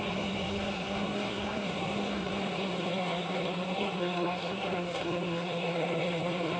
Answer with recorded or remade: remade